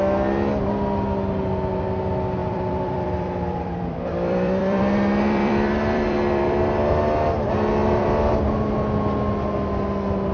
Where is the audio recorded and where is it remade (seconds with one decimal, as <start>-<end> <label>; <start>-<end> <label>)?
0.0-2.4 recorded; 2.4-6.9 remade; 6.9-7.8 recorded; 7.8-8.4 remade; 8.4-10.3 recorded